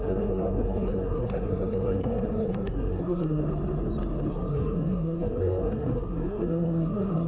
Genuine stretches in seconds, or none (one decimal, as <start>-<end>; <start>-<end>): 3.4-4.3